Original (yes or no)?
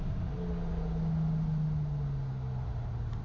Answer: yes